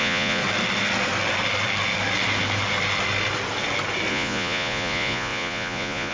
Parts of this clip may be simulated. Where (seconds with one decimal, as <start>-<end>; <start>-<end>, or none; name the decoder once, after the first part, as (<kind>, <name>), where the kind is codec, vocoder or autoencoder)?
0.0-0.4 (vocoder, Vocos); 4.1-6.1